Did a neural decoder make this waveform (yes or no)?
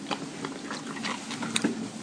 no